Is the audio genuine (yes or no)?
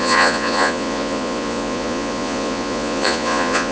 no